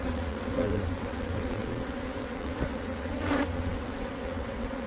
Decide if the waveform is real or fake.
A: fake